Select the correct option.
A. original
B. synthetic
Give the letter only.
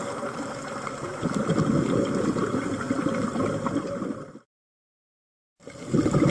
A